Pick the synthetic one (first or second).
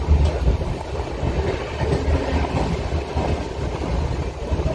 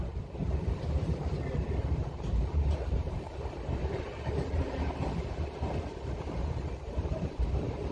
second